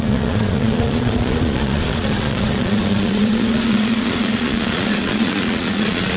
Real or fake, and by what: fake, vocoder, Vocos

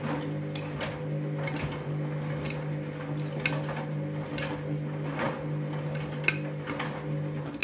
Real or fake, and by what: real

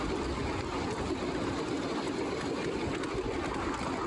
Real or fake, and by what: real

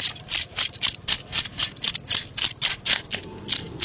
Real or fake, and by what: real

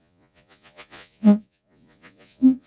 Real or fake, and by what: fake, vocoder, Vocos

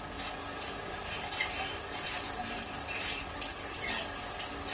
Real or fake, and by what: real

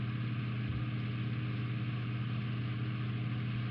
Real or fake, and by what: real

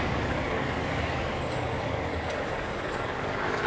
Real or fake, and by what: fake, codec, DAC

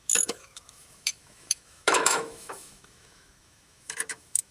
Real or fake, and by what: fake, autoencoder, DAC-VAE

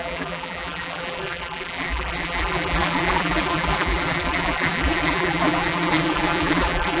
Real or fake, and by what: fake, vocoder, BigVGAN v2